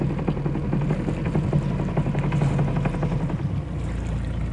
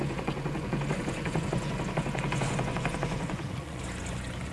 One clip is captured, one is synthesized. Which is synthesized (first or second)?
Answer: second